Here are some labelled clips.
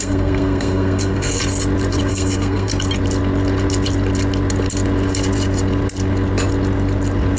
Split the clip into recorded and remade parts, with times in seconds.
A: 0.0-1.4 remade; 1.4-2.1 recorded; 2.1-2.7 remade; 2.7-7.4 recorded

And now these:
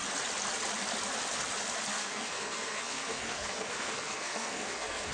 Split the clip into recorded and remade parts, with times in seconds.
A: 0.0-1.9 recorded; 1.9-5.1 remade

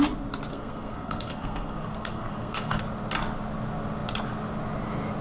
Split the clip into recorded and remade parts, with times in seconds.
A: 0.0-0.5 recorded; 0.5-2.8 remade; 2.8-5.2 recorded

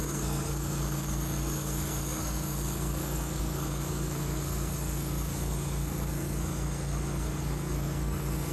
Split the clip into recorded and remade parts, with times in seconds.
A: 0.0-8.5 remade

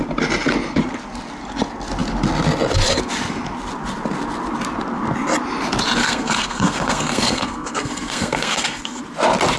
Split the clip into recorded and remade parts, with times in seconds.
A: 0.0-6.0 recorded; 6.0-9.0 remade; 9.0-9.6 recorded

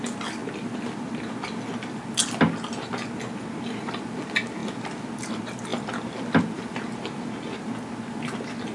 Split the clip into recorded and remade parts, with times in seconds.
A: 0.0-8.7 recorded